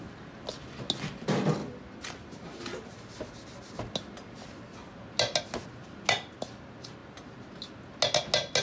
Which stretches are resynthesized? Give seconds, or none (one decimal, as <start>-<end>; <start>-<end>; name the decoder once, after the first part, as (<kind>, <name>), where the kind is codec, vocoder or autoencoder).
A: none